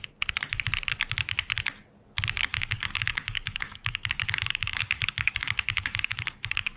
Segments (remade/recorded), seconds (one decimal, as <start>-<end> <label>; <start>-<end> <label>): 0.0-2.5 recorded; 2.5-6.8 remade